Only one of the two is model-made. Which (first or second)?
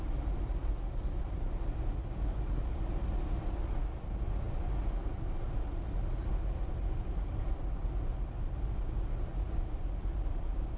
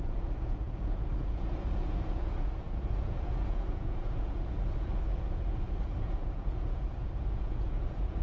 second